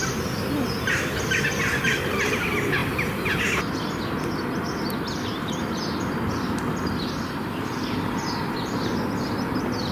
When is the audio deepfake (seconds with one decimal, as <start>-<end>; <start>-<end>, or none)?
none